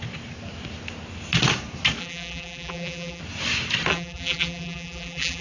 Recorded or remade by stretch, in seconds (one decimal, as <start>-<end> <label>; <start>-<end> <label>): 0.0-2.0 recorded; 2.0-3.2 remade; 3.2-3.9 recorded; 3.9-5.4 remade